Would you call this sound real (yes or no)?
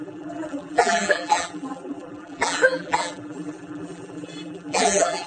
no